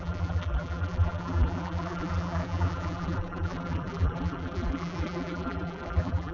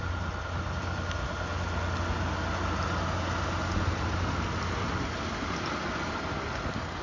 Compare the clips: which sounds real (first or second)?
second